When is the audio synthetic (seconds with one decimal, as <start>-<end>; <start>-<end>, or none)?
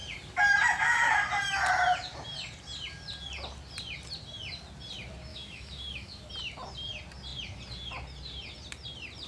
5.3-6.3